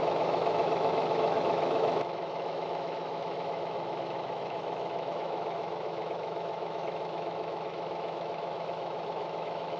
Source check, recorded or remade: remade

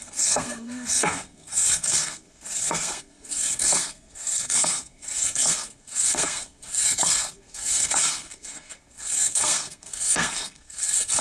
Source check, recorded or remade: remade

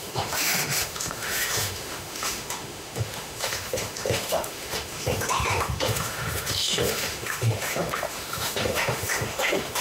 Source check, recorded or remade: remade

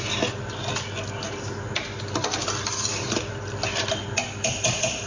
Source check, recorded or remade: recorded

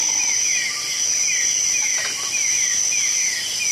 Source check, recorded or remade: recorded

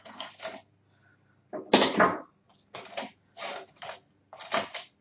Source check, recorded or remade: recorded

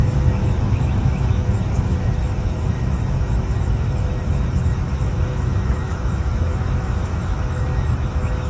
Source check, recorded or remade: remade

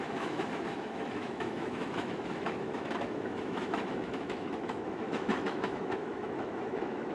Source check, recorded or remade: remade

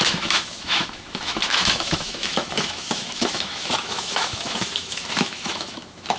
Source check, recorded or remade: remade